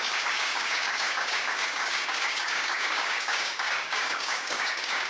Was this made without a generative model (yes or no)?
no